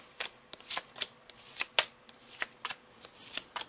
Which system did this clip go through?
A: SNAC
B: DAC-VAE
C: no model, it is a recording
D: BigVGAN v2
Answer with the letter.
C